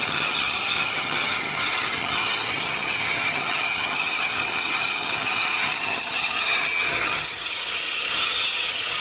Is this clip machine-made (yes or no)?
yes